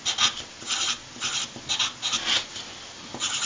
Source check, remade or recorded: recorded